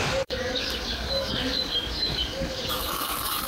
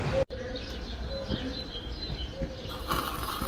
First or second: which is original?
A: second